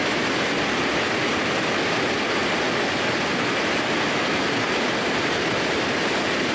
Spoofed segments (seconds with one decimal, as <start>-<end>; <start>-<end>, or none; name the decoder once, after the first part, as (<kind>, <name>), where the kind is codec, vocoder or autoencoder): none